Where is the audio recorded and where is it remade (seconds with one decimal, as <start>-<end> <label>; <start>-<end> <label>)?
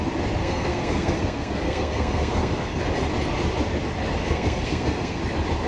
0.0-0.4 recorded; 0.4-2.8 remade; 2.8-4.2 recorded; 4.2-5.2 remade; 5.2-5.7 recorded